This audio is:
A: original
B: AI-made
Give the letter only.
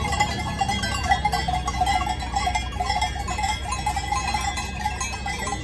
A